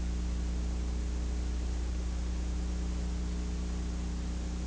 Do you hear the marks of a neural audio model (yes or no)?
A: no